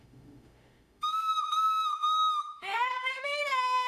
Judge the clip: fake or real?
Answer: fake